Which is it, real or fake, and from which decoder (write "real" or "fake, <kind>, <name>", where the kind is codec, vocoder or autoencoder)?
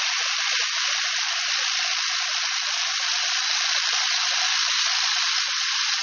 real